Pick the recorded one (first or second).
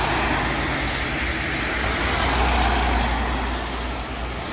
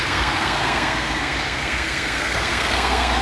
first